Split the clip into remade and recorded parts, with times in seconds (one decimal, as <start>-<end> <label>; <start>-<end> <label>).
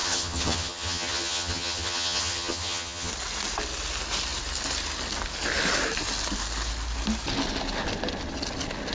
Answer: 0.0-3.1 remade; 3.1-8.9 recorded